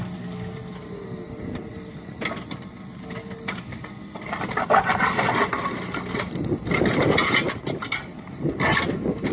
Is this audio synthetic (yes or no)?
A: yes